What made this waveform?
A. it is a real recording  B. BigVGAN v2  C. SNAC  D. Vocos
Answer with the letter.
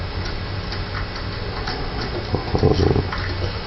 A